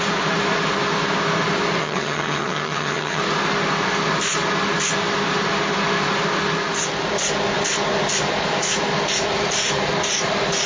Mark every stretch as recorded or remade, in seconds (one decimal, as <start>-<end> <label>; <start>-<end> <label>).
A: 0.0-1.8 recorded; 1.8-3.2 remade; 3.2-10.7 recorded